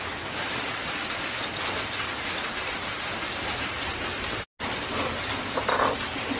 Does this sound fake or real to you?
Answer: real